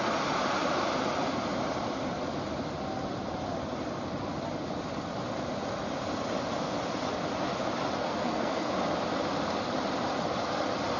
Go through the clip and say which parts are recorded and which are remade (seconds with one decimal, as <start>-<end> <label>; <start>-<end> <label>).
0.0-8.0 recorded; 8.0-8.7 remade; 8.7-11.0 recorded